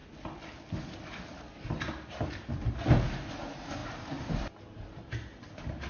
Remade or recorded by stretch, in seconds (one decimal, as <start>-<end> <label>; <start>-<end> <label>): 0.0-3.8 recorded; 3.8-5.4 remade; 5.4-5.9 recorded